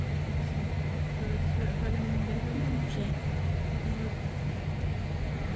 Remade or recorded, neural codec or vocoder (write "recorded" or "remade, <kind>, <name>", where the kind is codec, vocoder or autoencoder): recorded